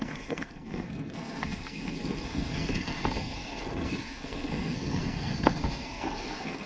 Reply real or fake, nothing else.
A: fake